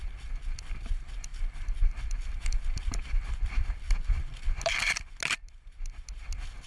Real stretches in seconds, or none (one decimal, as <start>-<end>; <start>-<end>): 0.0-6.7